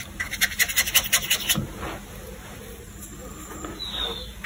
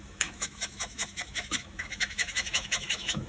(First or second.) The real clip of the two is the first